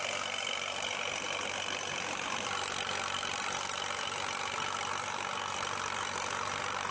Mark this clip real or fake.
real